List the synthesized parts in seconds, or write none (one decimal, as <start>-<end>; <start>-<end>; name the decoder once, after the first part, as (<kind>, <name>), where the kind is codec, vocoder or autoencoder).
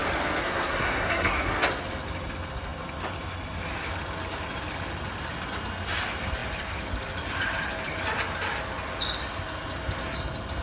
0.4-1.5 (codec, SNAC)